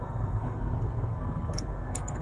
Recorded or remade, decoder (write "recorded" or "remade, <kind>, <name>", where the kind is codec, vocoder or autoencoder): remade, codec, SNAC